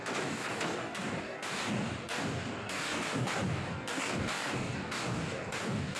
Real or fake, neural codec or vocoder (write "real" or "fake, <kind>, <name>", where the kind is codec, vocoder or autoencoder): fake, codec, DAC